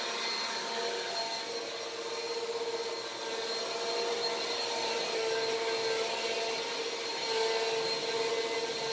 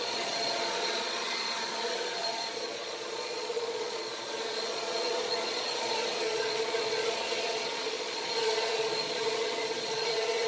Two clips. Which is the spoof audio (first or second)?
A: second